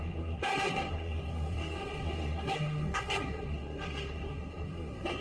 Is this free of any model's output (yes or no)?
no